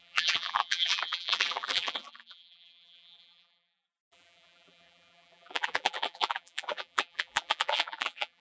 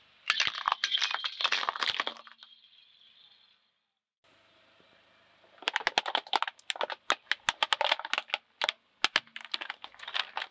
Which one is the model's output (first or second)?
first